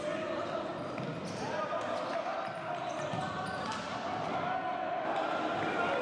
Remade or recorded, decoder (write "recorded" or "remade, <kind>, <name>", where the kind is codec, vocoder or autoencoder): recorded